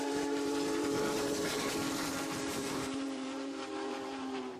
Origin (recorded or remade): remade